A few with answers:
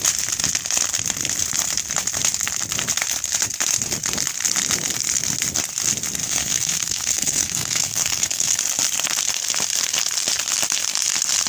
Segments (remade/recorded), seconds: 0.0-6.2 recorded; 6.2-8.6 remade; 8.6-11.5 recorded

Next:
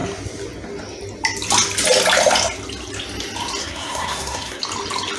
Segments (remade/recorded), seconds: 0.0-3.6 recorded; 3.6-4.6 remade; 4.6-5.2 recorded

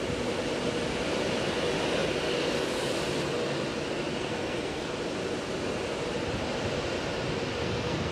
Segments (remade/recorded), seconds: 0.0-4.2 recorded; 4.2-4.9 remade; 4.9-7.6 recorded; 7.6-8.1 remade

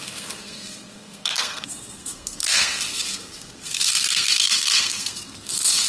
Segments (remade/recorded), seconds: 0.0-5.9 remade

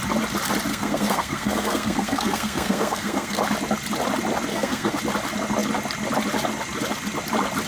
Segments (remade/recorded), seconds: 0.0-0.7 recorded; 0.7-3.4 remade; 3.4-4.5 recorded; 4.5-5.0 remade; 5.0-7.7 recorded

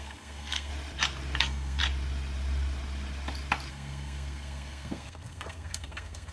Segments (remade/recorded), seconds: 0.0-0.7 remade; 0.7-1.4 recorded; 1.4-1.8 remade; 1.8-3.7 recorded; 3.7-6.3 remade

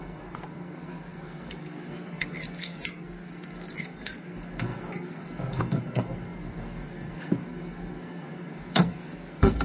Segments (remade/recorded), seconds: 0.0-9.6 remade

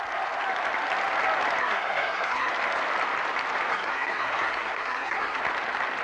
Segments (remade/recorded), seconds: 0.0-1.6 recorded; 1.6-2.5 remade; 2.5-3.7 recorded; 3.7-5.4 remade; 5.4-6.0 recorded